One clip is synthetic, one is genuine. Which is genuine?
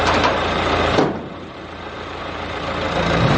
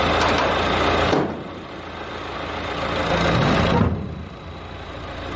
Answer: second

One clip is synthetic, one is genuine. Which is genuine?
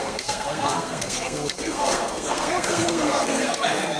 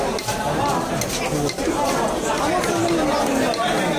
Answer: second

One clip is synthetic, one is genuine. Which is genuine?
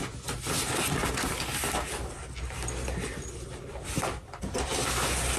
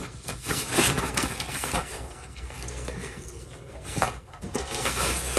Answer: first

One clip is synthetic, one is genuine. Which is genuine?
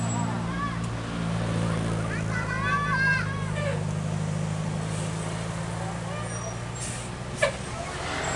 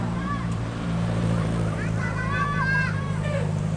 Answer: first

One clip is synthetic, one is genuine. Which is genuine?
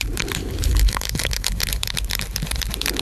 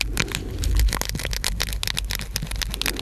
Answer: second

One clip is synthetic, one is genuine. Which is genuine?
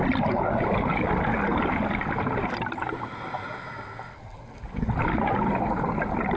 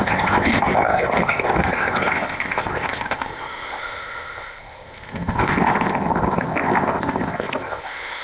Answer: first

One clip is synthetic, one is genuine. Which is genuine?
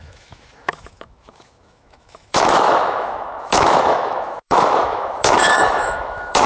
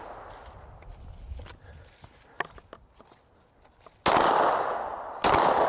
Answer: second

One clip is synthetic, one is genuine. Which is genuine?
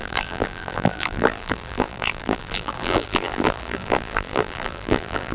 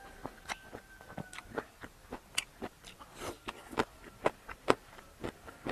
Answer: second